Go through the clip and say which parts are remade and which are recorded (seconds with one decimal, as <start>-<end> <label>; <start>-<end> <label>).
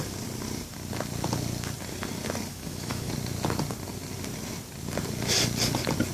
0.0-2.5 recorded; 2.5-3.1 remade; 3.1-6.1 recorded